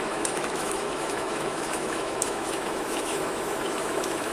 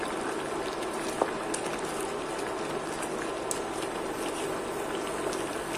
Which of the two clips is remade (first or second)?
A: first